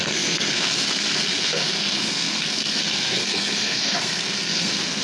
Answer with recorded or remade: remade